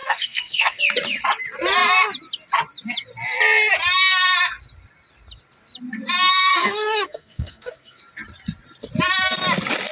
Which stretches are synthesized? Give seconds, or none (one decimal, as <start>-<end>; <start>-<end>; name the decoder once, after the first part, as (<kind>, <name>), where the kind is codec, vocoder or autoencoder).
0.0-0.8 (codec, SNAC); 6.5-8.0